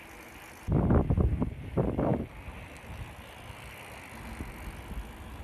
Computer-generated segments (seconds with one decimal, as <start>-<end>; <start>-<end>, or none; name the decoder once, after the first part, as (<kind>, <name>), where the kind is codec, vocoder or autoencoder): 1.1-2.1 (vocoder, BigVGAN v2)